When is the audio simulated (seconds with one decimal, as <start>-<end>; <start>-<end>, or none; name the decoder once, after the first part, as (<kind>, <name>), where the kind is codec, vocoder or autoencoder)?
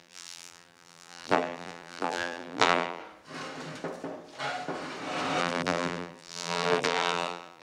0.0-3.0 (vocoder, BigVGAN v2); 5.4-7.6